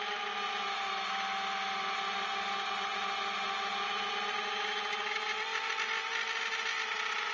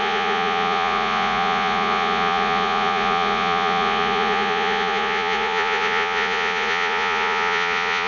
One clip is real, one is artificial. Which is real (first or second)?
first